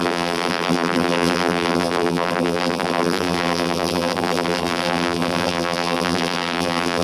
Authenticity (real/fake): fake